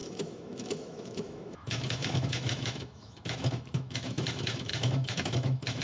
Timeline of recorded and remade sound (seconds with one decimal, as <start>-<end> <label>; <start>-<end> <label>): 0.0-5.8 remade